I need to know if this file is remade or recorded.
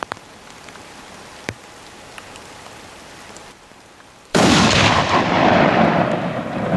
remade